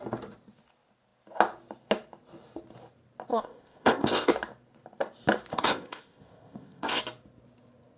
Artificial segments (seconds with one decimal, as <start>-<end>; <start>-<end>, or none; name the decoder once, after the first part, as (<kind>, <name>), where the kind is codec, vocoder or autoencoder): 3.3-4.3 (codec, ZipCodec); 5.5-7.0